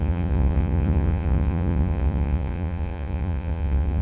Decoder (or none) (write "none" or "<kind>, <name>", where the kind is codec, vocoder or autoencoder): vocoder, Vocos